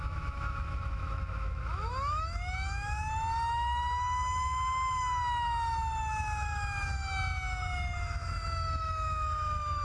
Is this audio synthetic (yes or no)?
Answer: yes